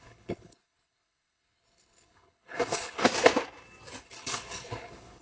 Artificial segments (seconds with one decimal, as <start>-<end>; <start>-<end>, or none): 0.0-3.0; 4.0-5.2